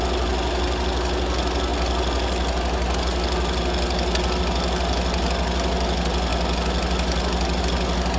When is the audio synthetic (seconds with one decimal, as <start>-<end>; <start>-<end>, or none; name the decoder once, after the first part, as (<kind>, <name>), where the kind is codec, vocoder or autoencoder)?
none